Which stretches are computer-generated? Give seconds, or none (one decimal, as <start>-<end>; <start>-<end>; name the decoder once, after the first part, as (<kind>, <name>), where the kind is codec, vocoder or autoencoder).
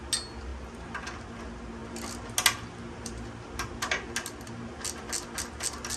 none